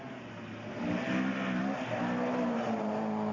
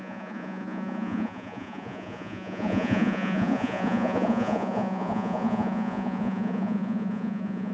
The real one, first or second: first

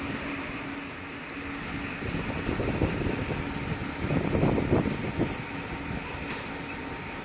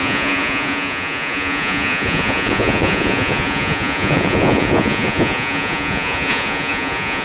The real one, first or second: first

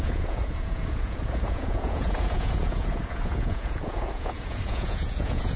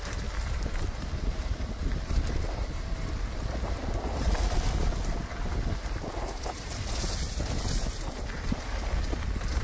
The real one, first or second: second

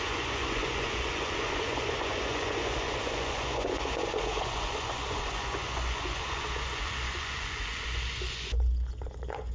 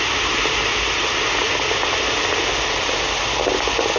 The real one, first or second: second